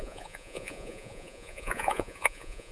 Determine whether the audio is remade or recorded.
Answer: remade